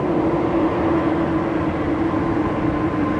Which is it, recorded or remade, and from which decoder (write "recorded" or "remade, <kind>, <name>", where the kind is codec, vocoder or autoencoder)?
recorded